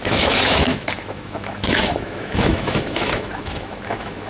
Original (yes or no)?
no